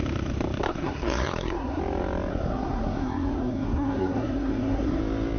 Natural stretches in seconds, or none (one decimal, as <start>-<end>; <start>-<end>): 0.0-0.6; 1.8-2.3; 5.0-5.4